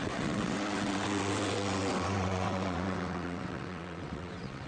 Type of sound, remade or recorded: remade